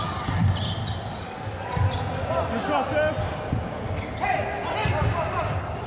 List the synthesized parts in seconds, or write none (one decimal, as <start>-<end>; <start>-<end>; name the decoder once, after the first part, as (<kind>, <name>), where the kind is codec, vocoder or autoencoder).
none